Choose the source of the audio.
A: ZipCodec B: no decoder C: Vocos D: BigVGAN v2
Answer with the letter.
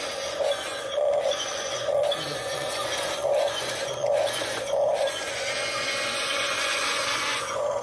C